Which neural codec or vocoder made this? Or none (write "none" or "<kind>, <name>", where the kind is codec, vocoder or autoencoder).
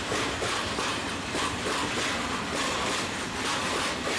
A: vocoder, BigVGAN v2